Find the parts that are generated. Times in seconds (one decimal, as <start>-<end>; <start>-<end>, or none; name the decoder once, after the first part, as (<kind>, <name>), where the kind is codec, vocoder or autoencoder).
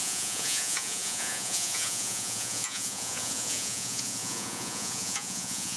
0.0-5.8 (vocoder, Vocos)